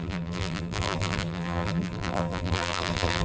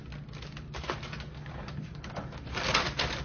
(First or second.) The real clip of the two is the second